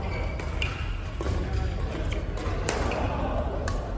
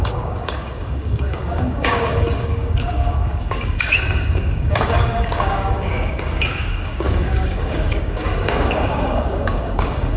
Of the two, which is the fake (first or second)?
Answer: second